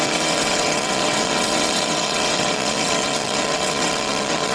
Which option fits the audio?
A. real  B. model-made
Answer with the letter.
B